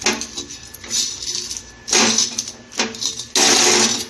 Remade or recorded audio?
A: recorded